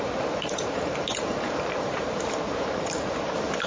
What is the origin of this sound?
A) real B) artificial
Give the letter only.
B